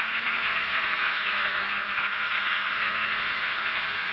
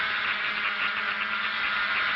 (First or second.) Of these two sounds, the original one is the second